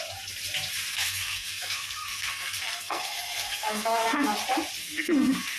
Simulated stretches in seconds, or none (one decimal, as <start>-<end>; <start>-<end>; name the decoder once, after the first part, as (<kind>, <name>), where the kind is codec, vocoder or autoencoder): 0.9-4.3 (codec, SNAC); 4.8-5.6